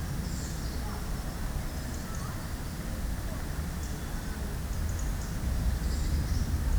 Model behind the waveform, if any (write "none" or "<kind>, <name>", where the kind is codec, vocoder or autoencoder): none